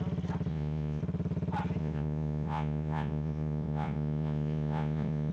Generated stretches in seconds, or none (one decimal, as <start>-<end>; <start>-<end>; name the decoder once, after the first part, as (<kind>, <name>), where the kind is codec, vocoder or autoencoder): 0.5-1.0 (vocoder, Vocos); 1.8-5.3